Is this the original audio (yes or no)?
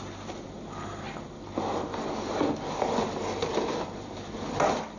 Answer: yes